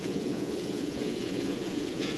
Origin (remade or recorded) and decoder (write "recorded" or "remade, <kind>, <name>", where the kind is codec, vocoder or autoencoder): remade, vocoder, Vocos